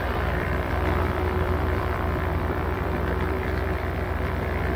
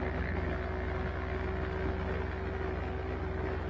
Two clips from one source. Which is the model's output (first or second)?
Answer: first